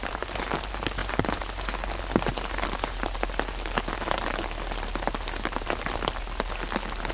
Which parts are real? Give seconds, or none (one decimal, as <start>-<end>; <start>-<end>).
0.0-7.1